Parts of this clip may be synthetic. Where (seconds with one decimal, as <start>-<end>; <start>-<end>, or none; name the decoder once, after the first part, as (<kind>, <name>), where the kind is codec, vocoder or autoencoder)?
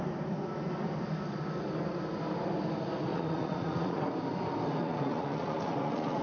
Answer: 3.1-4.0 (vocoder, Vocos); 4.8-6.2